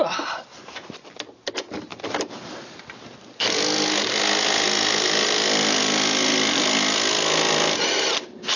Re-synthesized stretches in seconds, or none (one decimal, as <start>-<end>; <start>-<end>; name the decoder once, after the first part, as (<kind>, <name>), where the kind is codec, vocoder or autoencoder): none